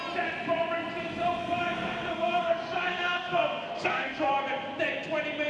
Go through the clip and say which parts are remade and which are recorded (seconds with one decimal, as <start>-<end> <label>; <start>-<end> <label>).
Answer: 0.0-1.4 recorded; 1.4-4.3 remade; 4.3-5.5 recorded